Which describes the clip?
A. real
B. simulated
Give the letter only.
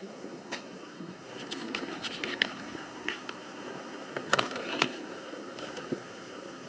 B